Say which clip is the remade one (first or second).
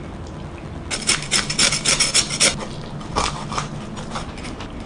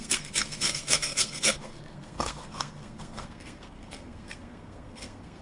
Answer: second